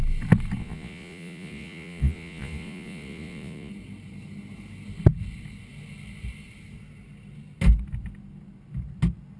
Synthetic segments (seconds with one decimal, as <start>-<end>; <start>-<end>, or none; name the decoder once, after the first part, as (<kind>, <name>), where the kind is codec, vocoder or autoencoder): 0.6-3.7 (vocoder, Vocos)